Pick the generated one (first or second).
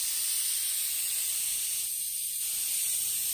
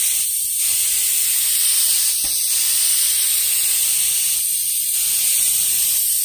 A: second